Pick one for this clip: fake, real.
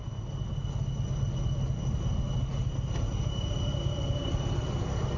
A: real